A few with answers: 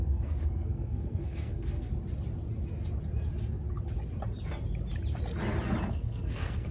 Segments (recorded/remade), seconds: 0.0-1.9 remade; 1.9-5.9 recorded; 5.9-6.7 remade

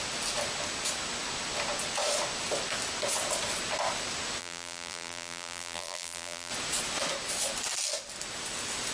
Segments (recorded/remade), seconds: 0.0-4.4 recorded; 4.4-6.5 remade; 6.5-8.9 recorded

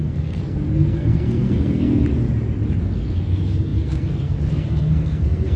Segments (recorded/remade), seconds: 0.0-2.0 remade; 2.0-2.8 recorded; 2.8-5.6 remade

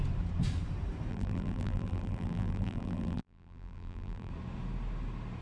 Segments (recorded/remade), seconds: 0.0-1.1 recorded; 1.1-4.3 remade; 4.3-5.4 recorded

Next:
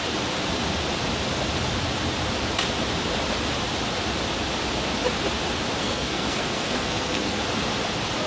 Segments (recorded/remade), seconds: 0.0-5.8 recorded; 5.8-7.4 remade; 7.4-8.3 recorded